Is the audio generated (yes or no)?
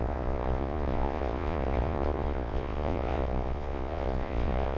yes